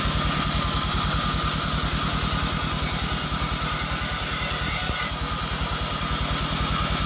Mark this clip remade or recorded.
recorded